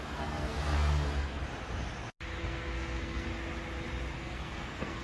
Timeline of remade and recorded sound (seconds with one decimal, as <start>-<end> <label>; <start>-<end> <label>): 0.0-1.4 remade; 1.4-2.4 recorded; 2.4-3.3 remade; 3.3-4.2 recorded; 4.2-5.0 remade